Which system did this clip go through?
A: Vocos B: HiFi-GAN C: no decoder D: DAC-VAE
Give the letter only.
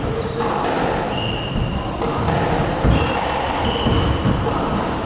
C